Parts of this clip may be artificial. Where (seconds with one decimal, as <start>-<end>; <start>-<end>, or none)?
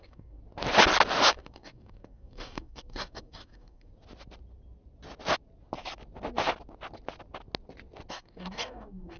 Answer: 0.0-0.4; 1.3-3.9; 8.1-9.2